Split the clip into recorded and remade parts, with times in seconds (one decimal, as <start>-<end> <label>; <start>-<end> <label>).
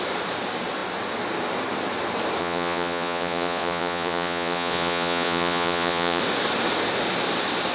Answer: 0.0-2.4 recorded; 2.4-6.2 remade; 6.2-7.7 recorded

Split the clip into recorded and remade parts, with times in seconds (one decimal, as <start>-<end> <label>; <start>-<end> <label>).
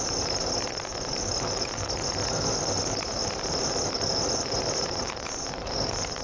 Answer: 0.0-6.2 recorded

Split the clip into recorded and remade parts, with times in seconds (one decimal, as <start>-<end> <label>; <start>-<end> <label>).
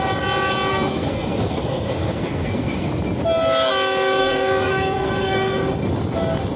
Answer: 0.0-0.7 recorded; 0.7-2.9 remade; 2.9-4.2 recorded; 4.2-5.6 remade; 5.6-6.6 recorded